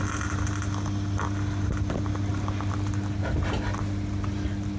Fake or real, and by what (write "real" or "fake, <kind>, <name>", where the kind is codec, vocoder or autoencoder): real